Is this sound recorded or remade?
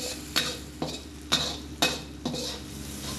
recorded